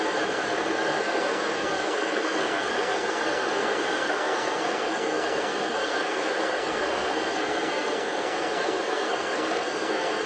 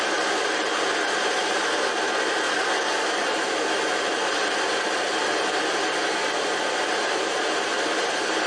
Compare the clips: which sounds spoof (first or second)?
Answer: first